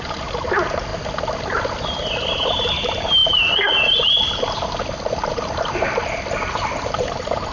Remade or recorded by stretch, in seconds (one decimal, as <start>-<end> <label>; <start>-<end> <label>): 0.0-0.9 remade; 0.9-2.2 recorded; 2.2-3.2 remade; 3.2-5.1 recorded; 5.1-6.0 remade; 6.0-6.5 recorded; 6.5-7.5 remade